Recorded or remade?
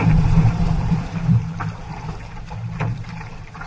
remade